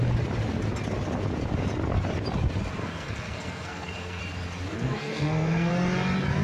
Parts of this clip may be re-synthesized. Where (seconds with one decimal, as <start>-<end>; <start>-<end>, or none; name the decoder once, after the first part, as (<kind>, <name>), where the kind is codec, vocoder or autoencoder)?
2.8-4.2 (codec, SNAC); 4.7-5.7